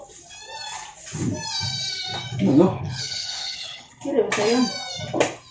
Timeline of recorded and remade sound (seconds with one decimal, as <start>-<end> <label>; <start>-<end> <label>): 0.0-2.7 recorded; 2.7-3.9 remade; 3.9-5.5 recorded